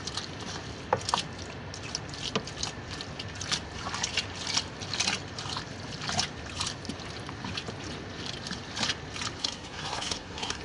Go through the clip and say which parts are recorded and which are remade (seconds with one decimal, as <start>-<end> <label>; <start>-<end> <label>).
0.0-9.4 recorded; 9.4-10.6 remade

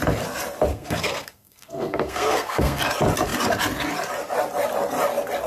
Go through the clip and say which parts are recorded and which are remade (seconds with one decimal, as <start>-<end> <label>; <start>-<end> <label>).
0.0-0.7 recorded; 0.7-2.8 remade; 2.8-5.5 recorded

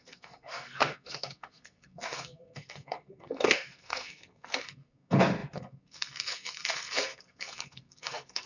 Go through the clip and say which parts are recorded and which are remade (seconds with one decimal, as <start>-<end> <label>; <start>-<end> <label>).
0.0-8.5 remade

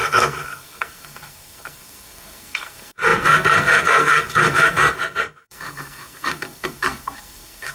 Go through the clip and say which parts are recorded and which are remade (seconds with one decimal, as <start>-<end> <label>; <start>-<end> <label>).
0.0-7.7 remade

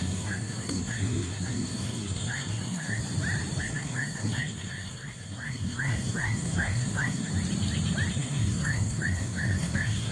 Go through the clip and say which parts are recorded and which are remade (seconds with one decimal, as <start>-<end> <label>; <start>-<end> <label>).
0.0-3.0 remade; 3.0-3.6 recorded; 3.6-7.3 remade; 7.3-8.1 recorded; 8.1-10.1 remade

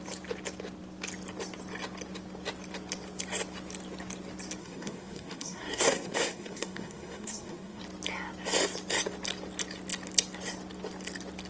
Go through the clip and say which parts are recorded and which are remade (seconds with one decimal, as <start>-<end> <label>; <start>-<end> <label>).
0.0-4.6 recorded; 4.6-7.8 remade; 7.8-11.5 recorded

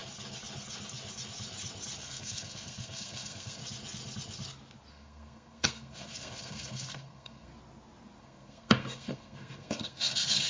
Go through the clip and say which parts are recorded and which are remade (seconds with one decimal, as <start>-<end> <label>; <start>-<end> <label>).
0.0-2.0 recorded; 2.0-3.6 remade; 3.6-4.9 recorded; 4.9-7.5 remade; 7.5-8.2 recorded; 8.2-10.5 remade